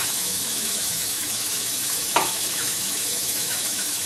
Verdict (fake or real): fake